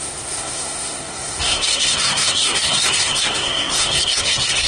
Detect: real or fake fake